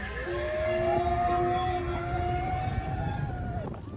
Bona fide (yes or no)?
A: yes